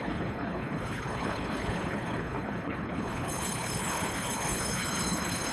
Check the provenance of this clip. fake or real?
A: fake